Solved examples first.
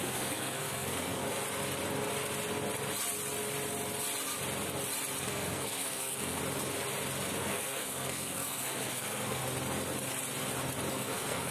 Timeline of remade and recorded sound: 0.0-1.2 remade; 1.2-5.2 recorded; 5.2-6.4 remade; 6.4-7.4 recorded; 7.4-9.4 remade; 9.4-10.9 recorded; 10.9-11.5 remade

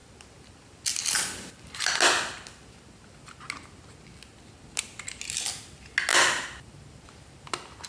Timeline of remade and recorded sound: 0.0-7.9 recorded

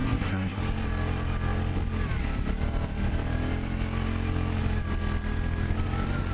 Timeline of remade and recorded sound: 0.0-0.6 remade; 0.6-6.3 recorded

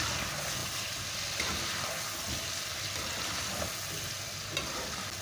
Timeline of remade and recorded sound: 0.0-5.2 recorded

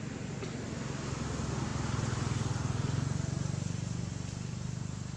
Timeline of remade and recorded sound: 0.0-5.2 recorded

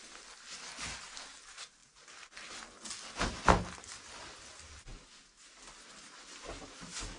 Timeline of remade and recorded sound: 0.0-7.2 recorded

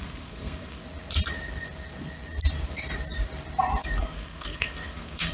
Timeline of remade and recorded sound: 0.0-0.8 remade; 0.8-4.0 recorded; 4.0-5.3 remade

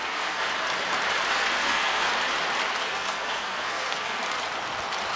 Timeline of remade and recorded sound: 0.0-0.5 remade; 0.5-1.3 recorded; 1.3-2.1 remade; 2.1-2.8 recorded; 2.8-4.2 remade; 4.2-5.2 recorded